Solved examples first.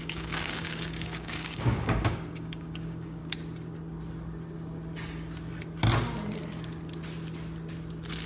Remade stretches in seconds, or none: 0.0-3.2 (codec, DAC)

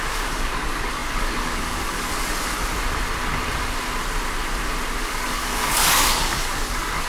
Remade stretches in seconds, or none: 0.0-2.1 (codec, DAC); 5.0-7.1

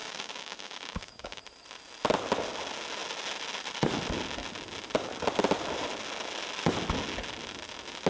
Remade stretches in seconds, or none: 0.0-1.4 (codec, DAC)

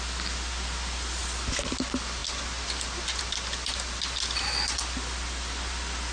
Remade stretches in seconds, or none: none

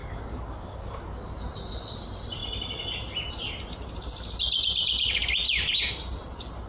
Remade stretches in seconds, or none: 0.0-1.4 (codec, DAC)